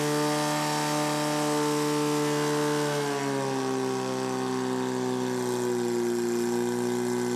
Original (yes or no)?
yes